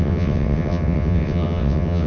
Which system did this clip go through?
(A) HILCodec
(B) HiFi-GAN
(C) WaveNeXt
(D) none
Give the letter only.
C